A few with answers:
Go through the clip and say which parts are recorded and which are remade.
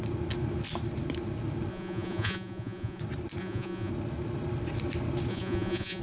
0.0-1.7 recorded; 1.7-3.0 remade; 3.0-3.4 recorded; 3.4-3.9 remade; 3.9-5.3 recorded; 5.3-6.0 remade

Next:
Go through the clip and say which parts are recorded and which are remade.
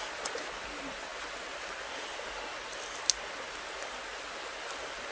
0.0-5.1 recorded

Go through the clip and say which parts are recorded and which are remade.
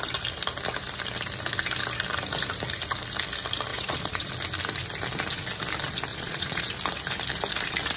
0.0-3.7 recorded; 3.7-4.3 remade; 4.3-6.1 recorded; 6.1-6.7 remade; 6.7-8.0 recorded